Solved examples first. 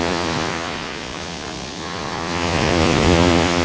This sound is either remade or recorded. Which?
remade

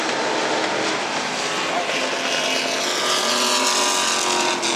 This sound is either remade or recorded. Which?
recorded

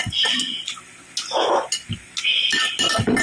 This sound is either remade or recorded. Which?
recorded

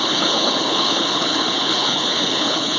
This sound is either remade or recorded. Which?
remade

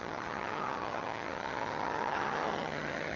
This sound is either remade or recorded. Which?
remade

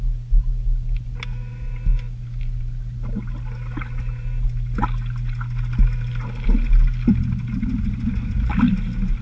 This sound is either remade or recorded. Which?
recorded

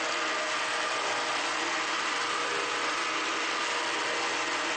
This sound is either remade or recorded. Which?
recorded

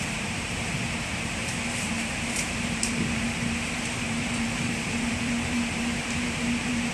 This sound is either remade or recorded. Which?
remade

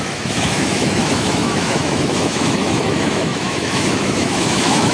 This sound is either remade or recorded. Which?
remade